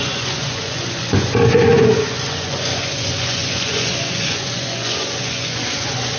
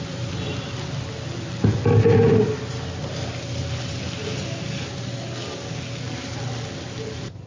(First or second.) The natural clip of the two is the second